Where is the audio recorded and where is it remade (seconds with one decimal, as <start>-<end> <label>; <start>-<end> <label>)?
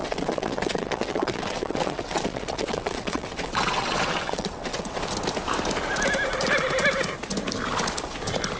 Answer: 0.0-5.0 remade; 5.0-8.6 recorded